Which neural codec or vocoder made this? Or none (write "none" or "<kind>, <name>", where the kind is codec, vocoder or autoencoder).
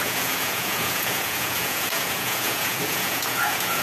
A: vocoder, Vocos